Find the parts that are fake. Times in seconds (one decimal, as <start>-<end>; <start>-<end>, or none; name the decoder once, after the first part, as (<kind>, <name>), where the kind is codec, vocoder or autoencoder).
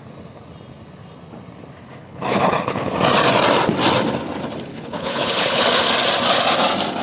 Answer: 2.0-2.9 (codec, HILCodec); 4.7-5.7